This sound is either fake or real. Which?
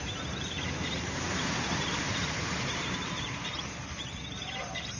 fake